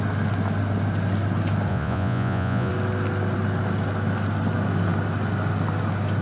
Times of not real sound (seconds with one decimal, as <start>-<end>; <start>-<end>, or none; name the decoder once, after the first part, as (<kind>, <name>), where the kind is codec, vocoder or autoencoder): 1.7-2.7 (vocoder, Vocos)